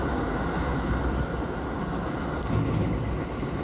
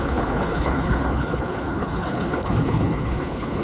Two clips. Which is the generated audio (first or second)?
second